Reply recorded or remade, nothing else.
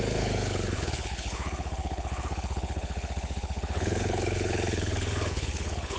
remade